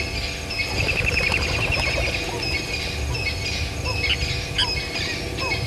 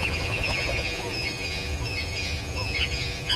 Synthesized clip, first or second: second